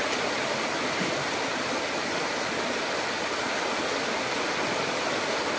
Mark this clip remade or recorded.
recorded